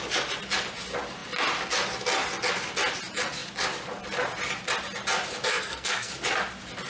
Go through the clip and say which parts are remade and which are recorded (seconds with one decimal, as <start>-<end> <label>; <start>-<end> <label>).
0.0-5.5 recorded; 5.5-6.1 remade; 6.1-6.9 recorded